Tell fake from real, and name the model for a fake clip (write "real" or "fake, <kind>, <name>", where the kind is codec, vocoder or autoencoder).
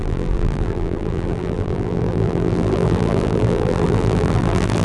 fake, vocoder, BigVGAN v2